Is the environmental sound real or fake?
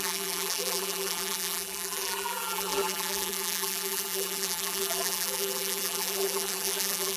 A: fake